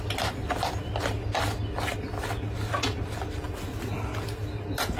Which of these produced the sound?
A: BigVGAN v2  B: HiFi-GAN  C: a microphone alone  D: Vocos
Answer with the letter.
C